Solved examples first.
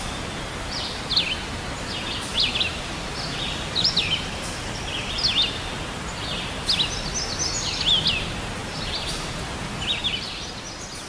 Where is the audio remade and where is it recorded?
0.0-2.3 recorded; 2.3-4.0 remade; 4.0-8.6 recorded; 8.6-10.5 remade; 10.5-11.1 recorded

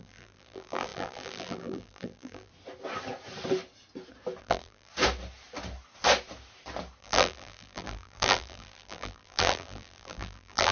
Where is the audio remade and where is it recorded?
0.0-2.5 remade; 2.5-4.4 recorded; 4.4-4.9 remade; 4.9-7.0 recorded; 7.0-10.7 remade